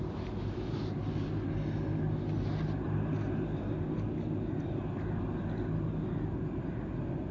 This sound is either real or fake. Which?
real